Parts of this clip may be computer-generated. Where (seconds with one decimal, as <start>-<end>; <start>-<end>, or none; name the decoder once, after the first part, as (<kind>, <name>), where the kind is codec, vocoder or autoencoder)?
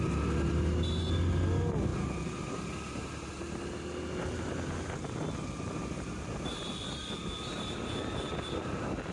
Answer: none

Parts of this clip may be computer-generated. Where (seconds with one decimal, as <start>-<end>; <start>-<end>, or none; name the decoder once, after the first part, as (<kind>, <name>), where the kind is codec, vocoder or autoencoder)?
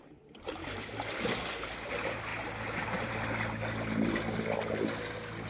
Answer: none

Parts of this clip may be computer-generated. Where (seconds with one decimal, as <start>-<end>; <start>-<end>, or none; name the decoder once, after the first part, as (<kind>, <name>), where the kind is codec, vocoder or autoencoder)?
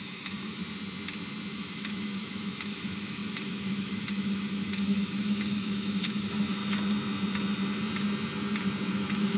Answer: 0.0-0.6 (autoencoder, DAC-VAE); 1.5-6.6; 8.9-9.4